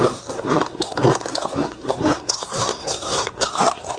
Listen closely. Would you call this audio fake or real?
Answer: fake